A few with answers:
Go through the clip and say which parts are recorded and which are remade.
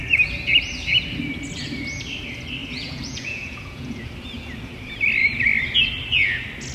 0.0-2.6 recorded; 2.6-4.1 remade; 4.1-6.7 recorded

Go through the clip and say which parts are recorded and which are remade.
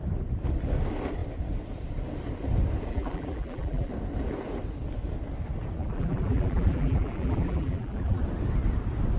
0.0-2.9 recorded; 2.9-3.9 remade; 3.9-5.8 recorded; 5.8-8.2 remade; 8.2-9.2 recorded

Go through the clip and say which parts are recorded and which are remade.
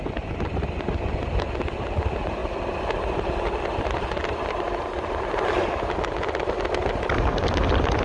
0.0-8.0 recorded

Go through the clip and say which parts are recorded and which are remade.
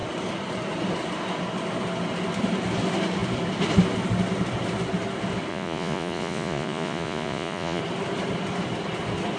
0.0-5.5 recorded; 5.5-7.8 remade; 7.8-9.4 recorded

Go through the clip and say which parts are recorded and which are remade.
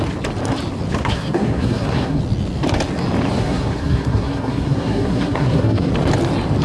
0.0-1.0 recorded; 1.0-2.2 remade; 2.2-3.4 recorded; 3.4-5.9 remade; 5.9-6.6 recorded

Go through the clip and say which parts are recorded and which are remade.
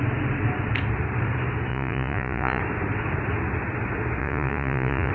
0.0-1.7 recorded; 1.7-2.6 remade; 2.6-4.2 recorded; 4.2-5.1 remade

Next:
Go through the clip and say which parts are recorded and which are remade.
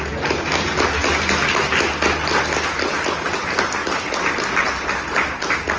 0.0-5.8 recorded